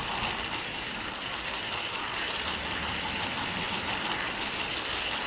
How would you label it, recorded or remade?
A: recorded